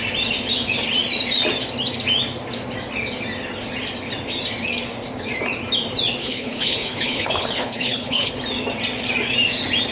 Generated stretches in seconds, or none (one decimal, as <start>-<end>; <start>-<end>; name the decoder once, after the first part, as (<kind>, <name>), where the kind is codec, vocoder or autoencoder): 6.2-8.3 (codec, HILCodec)